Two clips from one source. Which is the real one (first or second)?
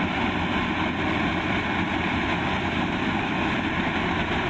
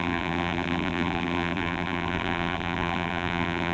first